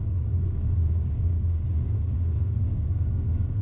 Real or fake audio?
fake